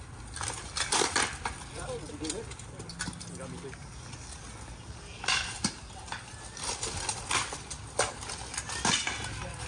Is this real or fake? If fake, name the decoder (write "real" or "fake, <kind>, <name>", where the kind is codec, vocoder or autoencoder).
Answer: real